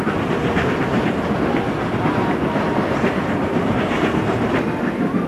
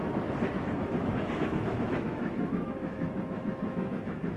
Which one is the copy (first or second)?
second